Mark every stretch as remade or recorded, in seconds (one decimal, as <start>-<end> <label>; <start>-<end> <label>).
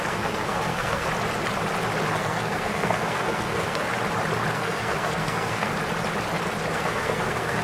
0.0-1.1 remade; 1.1-2.1 recorded; 2.1-3.9 remade; 3.9-4.5 recorded; 4.5-5.7 remade; 5.7-6.7 recorded; 6.7-7.6 remade